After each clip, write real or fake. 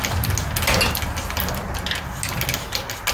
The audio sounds real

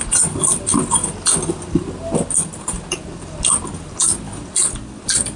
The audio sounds fake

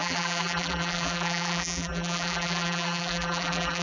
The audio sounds fake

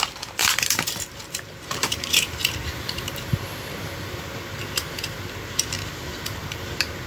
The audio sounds fake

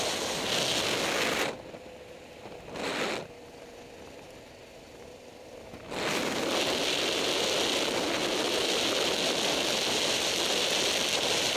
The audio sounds real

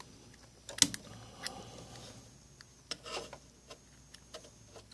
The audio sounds real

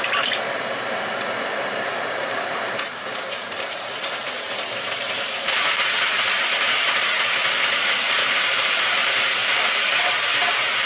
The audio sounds fake